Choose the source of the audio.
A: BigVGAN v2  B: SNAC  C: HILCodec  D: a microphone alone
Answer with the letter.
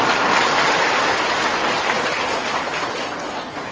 D